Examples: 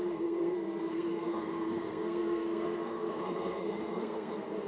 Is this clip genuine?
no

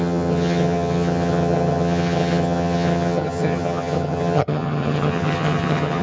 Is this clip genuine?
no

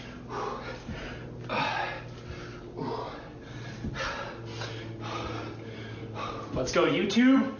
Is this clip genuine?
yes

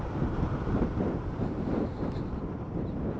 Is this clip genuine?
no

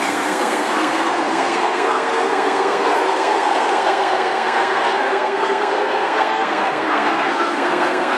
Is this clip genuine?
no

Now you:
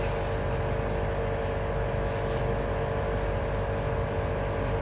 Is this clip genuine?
yes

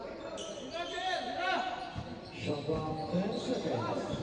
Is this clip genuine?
yes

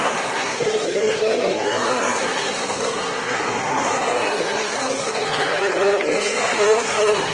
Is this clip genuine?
no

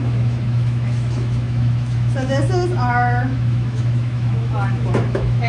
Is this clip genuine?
no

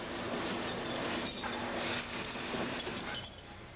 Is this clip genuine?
yes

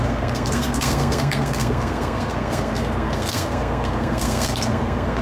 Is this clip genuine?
no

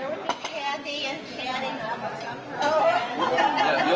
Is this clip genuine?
yes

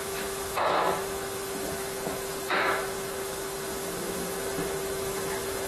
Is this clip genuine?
no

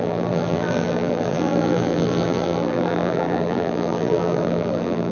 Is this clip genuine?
no